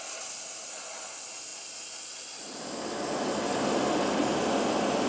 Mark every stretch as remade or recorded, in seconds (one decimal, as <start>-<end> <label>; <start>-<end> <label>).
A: 0.0-5.1 recorded